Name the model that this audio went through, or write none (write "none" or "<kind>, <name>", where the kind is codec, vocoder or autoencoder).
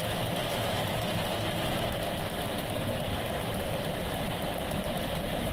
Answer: vocoder, BigVGAN v2